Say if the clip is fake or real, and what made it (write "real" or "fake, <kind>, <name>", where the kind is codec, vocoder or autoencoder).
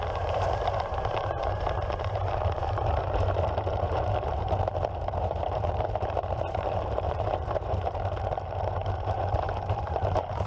fake, vocoder, BigVGAN v2